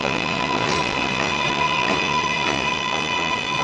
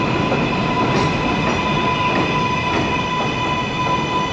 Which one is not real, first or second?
first